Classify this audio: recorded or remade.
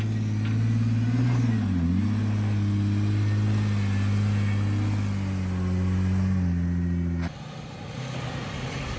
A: recorded